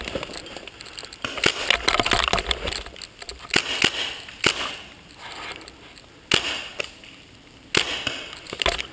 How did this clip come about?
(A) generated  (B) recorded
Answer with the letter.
B